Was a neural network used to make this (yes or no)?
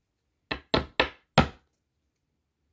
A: no